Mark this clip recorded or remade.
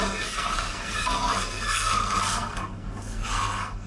remade